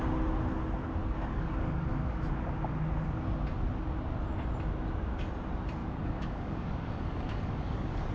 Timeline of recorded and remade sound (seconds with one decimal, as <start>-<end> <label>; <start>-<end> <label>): 0.0-1.0 recorded; 1.0-2.2 remade; 2.2-5.8 recorded; 5.8-8.1 remade